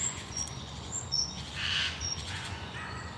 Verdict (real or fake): fake